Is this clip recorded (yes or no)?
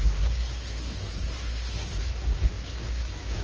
no